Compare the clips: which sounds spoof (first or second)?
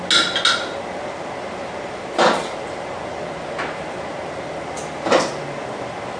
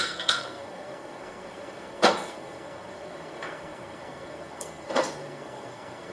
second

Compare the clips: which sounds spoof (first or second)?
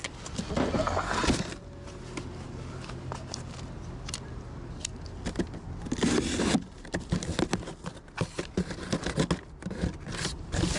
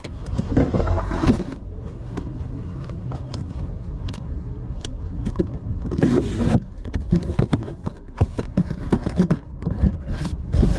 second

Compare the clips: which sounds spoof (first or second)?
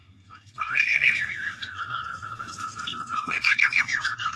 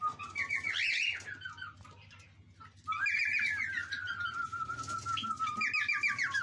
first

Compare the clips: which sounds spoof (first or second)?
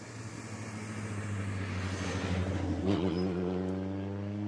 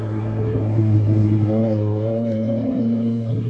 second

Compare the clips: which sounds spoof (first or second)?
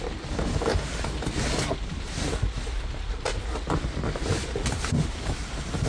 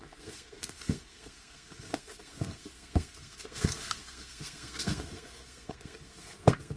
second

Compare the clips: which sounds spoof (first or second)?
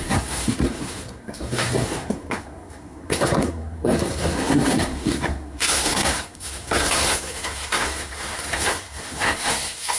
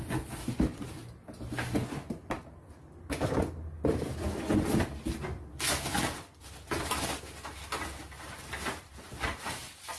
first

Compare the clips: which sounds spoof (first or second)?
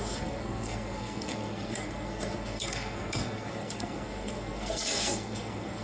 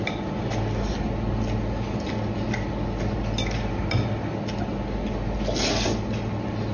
first